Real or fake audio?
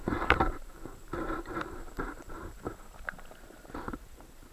fake